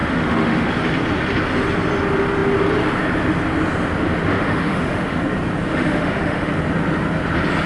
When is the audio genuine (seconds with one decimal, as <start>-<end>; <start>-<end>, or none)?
0.7-4.3; 5.2-5.7; 6.5-7.7